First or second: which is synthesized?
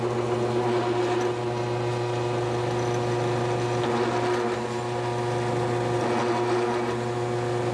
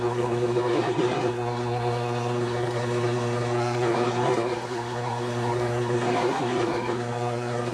second